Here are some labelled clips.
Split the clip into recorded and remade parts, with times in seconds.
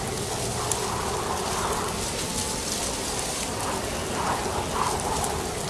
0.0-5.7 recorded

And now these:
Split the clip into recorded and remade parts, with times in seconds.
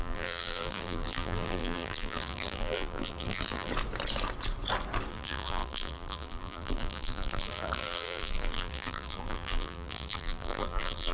0.0-3.7 remade; 3.7-5.1 recorded; 5.1-11.1 remade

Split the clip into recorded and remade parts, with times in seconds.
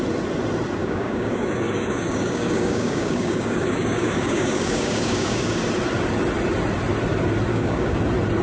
0.0-0.8 recorded; 0.8-5.6 remade; 5.6-7.5 recorded; 7.5-8.0 remade; 8.0-8.4 recorded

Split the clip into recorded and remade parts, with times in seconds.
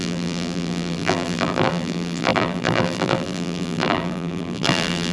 0.0-5.1 remade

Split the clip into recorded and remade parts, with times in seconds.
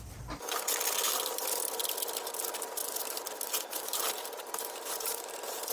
0.0-2.8 recorded; 2.8-5.7 remade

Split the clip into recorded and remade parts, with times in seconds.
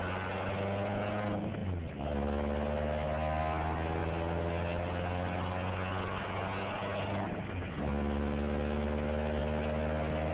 0.0-10.3 recorded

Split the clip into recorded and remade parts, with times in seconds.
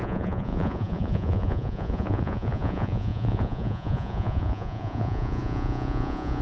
0.0-6.4 remade